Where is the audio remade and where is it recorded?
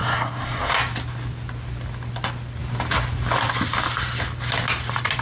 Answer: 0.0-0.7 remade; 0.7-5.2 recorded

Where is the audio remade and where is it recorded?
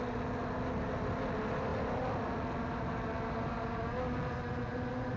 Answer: 0.0-5.2 recorded